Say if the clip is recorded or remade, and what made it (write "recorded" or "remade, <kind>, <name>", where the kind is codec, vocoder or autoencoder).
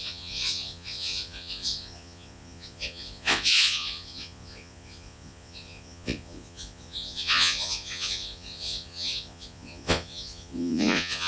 remade, vocoder, Vocos